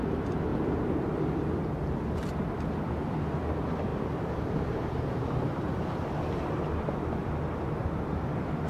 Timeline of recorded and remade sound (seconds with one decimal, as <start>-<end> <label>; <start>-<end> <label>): 0.0-0.5 recorded; 0.5-1.6 remade; 1.6-8.7 recorded